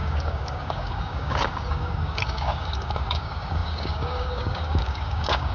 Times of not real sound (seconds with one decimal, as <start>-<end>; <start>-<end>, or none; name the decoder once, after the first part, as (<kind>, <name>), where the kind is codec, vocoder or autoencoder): 0.0-5.5 (codec, DAC)